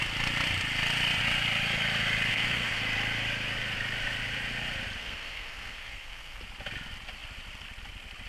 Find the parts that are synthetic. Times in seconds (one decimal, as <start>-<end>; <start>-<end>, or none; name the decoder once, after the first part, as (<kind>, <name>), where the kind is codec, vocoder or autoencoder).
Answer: 2.3-2.8 (codec, SNAC); 5.0-6.4